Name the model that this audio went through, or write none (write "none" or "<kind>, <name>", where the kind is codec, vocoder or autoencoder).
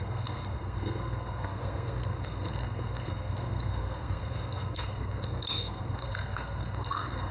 codec, SNAC